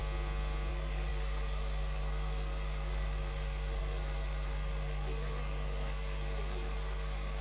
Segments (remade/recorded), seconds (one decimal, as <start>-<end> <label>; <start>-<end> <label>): 0.0-0.7 recorded; 0.7-7.4 remade